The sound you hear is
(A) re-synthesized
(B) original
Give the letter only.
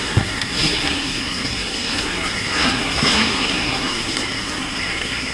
A